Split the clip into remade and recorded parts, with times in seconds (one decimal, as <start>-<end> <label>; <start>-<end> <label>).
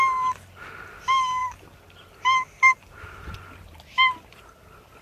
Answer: 0.0-5.0 recorded